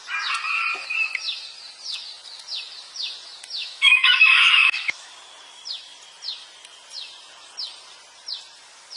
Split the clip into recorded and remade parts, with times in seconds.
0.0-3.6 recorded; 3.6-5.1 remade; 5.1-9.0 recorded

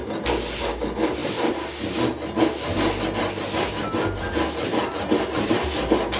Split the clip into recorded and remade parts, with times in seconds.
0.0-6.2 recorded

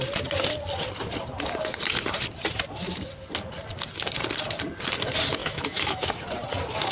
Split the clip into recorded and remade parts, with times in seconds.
0.0-5.4 recorded; 5.4-6.2 remade; 6.2-6.9 recorded